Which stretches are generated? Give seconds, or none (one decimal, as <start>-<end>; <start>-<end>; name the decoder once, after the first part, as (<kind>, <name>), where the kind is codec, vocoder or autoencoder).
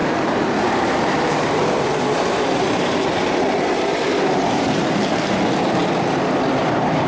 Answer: 0.0-5.8 (vocoder, BigVGAN v2); 6.6-7.1